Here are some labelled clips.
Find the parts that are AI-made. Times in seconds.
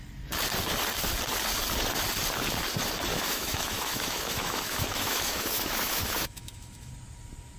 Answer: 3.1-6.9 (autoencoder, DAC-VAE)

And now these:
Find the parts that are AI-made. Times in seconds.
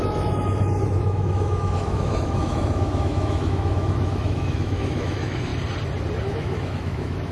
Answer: 0.0-5.5 (autoencoder, DAC-VAE); 6.2-7.3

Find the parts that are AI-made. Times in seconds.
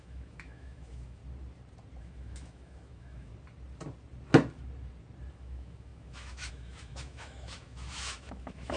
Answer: 0.0-1.2 (autoencoder, DAC-VAE); 2.0-3.3; 5.3-8.8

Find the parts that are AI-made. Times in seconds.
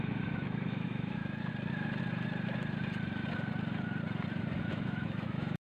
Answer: 0.0-1.2 (autoencoder, DAC-VAE); 4.7-5.8